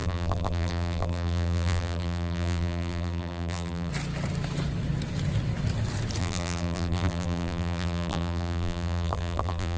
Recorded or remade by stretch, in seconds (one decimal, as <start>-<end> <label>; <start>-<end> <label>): 0.0-3.9 remade; 3.9-6.2 recorded; 6.2-9.8 remade

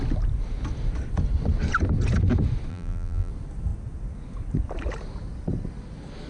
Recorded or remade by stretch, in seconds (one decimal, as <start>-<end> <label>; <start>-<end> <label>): 0.0-2.7 recorded; 2.7-3.3 remade; 3.3-6.3 recorded